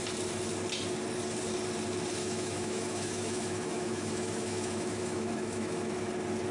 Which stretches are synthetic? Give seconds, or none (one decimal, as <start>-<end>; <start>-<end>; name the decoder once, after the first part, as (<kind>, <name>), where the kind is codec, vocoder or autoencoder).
2.2-6.1 (autoencoder, DAC-VAE)